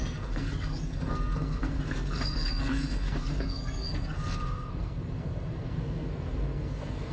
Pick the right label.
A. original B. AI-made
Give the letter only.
B